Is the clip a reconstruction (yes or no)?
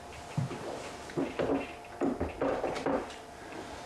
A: no